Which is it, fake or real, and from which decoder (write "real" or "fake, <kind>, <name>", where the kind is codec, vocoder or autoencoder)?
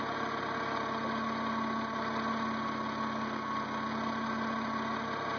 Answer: real